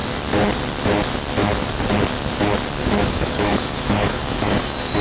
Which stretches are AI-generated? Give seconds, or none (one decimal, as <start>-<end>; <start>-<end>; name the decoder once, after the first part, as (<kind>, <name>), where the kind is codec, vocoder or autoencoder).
3.0-5.0 (codec, DAC)